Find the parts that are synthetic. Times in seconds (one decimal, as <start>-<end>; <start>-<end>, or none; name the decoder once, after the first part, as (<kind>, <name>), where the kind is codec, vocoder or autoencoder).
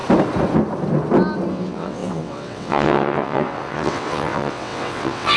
1.5-5.4 (vocoder, WaveNeXt)